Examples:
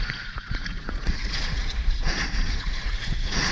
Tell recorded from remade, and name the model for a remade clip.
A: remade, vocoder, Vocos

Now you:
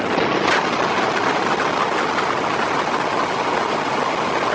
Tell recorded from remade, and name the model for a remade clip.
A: recorded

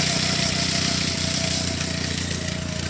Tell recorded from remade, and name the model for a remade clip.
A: recorded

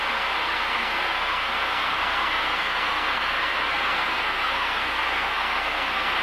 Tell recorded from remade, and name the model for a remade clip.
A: remade, codec, SNAC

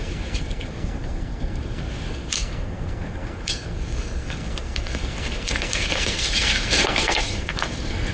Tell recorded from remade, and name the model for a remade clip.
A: remade, codec, SNAC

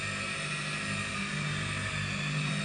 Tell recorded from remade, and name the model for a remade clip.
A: recorded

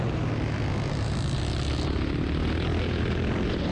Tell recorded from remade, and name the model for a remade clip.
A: recorded